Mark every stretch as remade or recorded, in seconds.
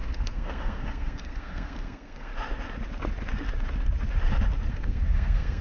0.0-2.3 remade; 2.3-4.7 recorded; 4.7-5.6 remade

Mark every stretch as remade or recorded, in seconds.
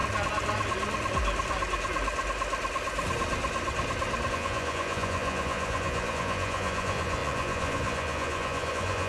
0.0-4.3 recorded; 4.3-9.1 remade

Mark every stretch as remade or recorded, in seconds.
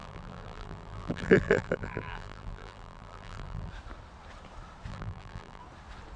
0.0-3.7 remade; 3.7-4.9 recorded; 4.9-5.6 remade; 5.6-6.2 recorded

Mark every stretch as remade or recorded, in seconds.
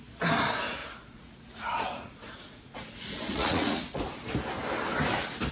0.0-0.8 recorded; 0.8-4.0 remade; 4.0-5.5 recorded